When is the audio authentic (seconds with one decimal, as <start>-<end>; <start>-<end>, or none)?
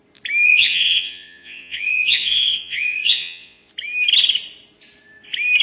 0.0-0.5; 3.7-5.6